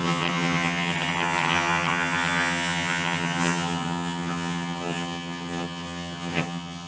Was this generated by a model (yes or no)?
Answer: yes